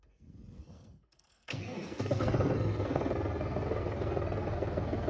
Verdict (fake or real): fake